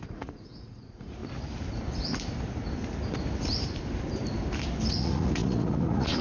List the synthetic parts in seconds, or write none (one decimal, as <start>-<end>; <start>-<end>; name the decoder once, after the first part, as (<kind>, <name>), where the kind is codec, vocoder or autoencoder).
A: 0.0-1.2 (vocoder, Vocos); 4.9-6.2